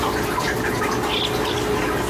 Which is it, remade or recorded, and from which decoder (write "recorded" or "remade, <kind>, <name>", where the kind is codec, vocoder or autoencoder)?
recorded